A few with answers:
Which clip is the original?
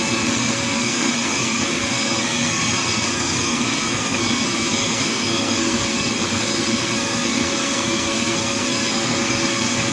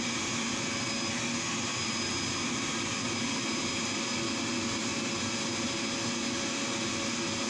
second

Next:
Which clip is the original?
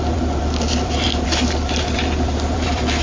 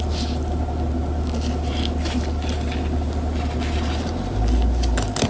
second